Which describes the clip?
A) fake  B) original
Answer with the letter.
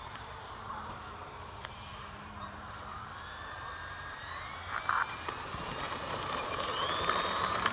A